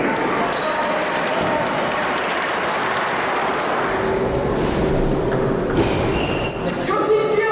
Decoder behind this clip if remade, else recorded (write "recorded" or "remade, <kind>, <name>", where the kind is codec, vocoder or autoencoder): recorded